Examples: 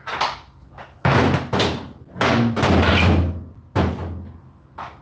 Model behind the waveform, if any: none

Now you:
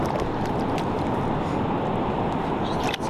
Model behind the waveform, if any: none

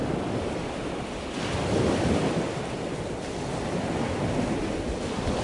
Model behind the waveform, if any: none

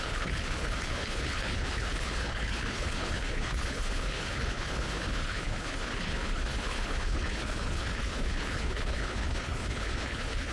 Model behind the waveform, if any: codec, HILCodec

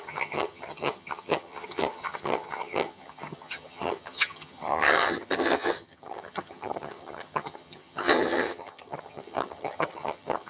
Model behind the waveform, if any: vocoder, HiFi-GAN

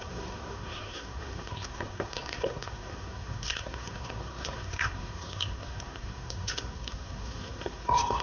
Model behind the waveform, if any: codec, SNAC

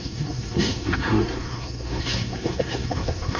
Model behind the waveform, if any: codec, SNAC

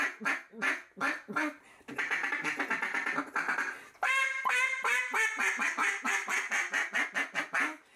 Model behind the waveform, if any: none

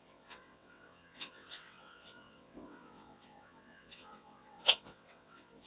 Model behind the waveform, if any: vocoder, WaveNeXt